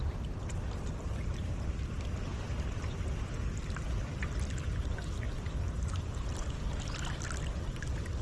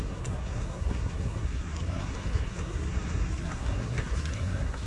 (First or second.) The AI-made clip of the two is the second